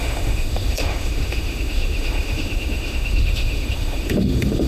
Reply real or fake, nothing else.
fake